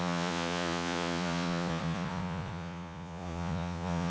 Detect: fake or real fake